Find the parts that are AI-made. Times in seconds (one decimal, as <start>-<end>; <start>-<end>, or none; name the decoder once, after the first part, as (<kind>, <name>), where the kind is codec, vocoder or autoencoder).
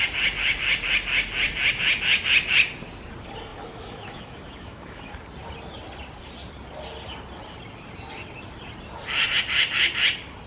3.5-5.1 (autoencoder, DAC-VAE)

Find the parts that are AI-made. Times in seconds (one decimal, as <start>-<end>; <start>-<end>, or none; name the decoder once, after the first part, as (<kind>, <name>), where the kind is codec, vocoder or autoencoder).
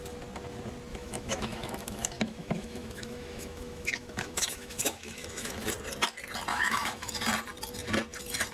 0.9-5.7 (autoencoder, DAC-VAE); 6.5-7.1